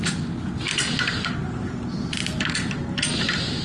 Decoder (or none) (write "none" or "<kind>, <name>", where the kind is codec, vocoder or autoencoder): none